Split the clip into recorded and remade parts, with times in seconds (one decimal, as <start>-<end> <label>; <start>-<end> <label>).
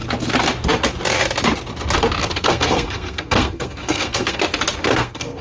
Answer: 0.0-2.2 recorded; 2.2-4.4 remade; 4.4-4.9 recorded; 4.9-5.4 remade